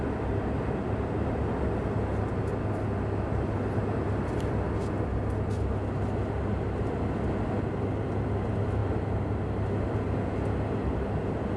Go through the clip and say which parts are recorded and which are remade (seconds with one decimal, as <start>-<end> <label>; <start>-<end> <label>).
0.0-11.6 recorded